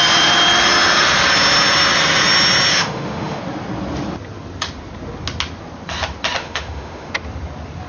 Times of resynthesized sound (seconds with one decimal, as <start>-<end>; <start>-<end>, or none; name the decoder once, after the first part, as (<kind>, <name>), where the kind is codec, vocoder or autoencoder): 2.7-3.4 (autoencoder, DAC-VAE); 6.4-7.1